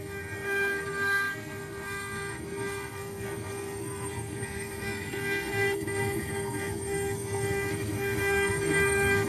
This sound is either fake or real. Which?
fake